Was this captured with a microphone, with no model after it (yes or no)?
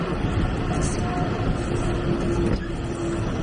yes